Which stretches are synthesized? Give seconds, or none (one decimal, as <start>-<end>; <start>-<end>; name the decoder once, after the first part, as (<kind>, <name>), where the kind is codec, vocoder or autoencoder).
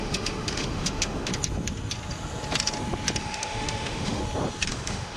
0.0-1.3 (autoencoder, DAC-VAE); 3.2-4.2; 4.7-5.2